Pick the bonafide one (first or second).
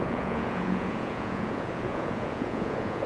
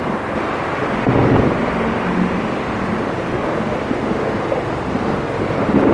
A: second